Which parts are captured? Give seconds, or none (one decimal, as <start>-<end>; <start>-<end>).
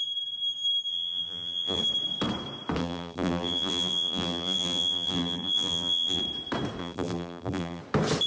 0.0-0.9; 1.8-2.8; 6.2-6.8; 7.8-8.3